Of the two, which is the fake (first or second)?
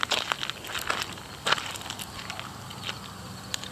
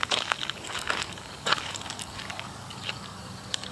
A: second